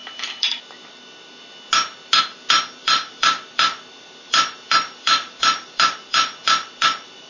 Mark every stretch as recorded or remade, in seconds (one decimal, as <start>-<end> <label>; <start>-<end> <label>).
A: 0.0-2.8 recorded; 2.8-7.3 remade